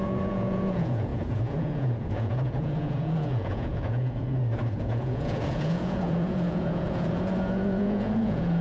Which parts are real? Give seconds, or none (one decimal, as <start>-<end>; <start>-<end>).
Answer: none